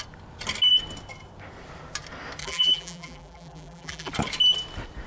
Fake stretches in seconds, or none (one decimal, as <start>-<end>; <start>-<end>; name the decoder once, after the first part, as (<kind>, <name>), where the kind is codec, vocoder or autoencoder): 2.4-4.1 (vocoder, BigVGAN v2)